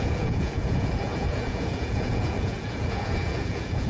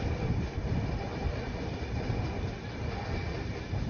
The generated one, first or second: first